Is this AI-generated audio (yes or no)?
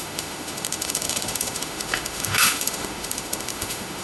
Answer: yes